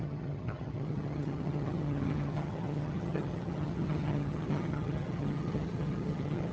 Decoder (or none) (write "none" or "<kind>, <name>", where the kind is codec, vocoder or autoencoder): vocoder, HiFi-GAN